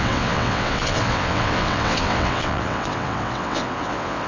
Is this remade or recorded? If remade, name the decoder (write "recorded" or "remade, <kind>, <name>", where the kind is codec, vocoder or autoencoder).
remade, vocoder, WaveNeXt